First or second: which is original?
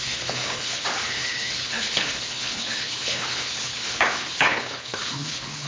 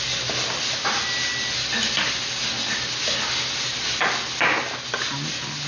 second